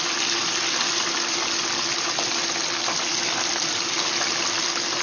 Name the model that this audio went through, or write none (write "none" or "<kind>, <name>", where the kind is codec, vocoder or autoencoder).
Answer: none